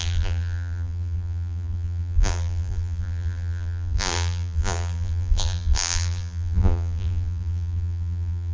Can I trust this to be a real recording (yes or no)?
no